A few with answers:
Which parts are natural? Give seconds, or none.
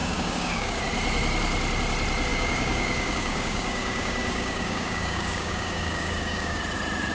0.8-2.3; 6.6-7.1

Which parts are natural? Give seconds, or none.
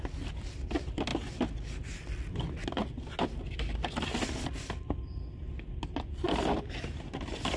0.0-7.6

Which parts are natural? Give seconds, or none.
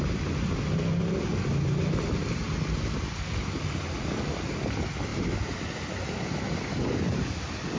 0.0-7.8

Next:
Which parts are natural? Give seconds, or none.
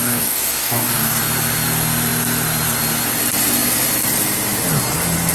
1.2-5.3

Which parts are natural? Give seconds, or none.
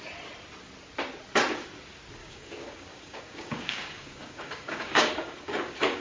0.0-2.2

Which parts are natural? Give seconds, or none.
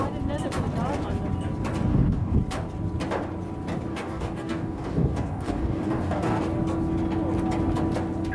0.0-1.9; 2.4-3.9; 6.4-8.3